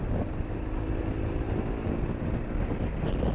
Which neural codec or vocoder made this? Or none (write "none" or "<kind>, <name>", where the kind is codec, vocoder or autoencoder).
none